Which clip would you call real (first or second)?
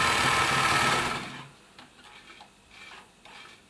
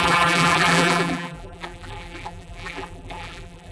first